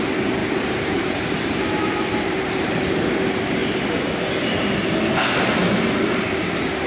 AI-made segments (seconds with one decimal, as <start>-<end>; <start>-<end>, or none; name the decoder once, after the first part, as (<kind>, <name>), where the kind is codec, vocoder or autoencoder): 0.4-2.9 (vocoder, BigVGAN v2)